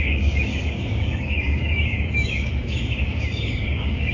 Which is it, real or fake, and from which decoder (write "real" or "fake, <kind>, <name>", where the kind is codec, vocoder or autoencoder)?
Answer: fake, codec, DAC